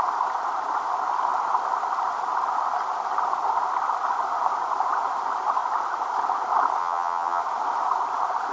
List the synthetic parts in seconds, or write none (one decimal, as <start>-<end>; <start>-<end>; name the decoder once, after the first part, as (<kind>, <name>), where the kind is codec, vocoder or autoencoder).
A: 6.8-7.4 (vocoder, HiFi-GAN)